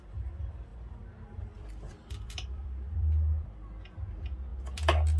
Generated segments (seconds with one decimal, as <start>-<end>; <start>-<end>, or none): 0.7-3.8

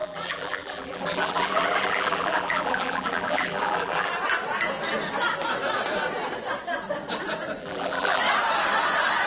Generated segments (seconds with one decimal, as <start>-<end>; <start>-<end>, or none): 0.0-4.1; 7.6-8.2